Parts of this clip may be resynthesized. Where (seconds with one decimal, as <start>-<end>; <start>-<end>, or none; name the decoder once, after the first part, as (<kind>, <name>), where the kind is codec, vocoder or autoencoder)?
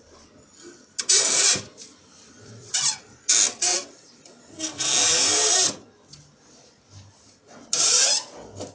1.7-2.9 (vocoder, BigVGAN v2); 3.7-4.9